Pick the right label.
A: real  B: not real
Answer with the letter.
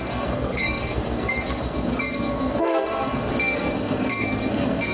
B